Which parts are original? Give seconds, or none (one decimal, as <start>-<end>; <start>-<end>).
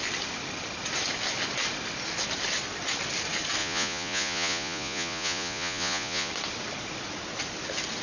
0.0-3.6; 6.3-8.0